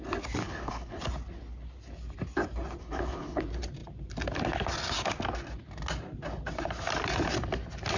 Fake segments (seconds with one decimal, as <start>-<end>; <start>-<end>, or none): 0.4-1.0; 2.8-3.4